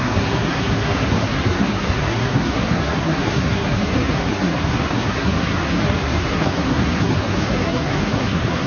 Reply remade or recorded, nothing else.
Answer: remade